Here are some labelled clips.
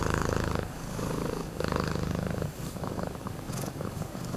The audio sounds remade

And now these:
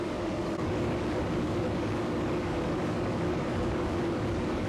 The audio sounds remade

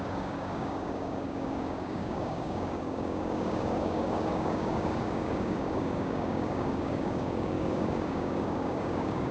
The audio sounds remade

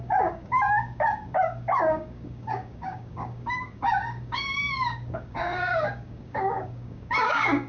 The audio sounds remade